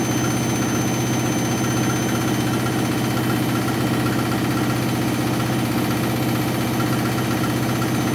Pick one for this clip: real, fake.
real